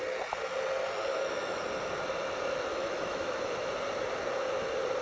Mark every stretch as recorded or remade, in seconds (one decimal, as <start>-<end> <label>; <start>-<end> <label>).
0.0-1.1 recorded; 1.1-1.6 remade; 1.6-2.7 recorded; 2.7-3.5 remade; 3.5-5.0 recorded